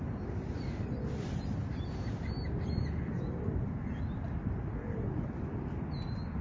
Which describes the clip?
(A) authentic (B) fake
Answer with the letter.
A